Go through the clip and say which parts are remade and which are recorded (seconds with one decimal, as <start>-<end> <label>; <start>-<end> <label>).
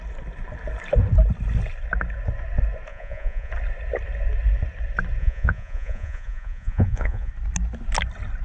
0.0-2.9 recorded; 2.9-3.5 remade; 3.5-5.2 recorded; 5.2-7.3 remade; 7.3-8.4 recorded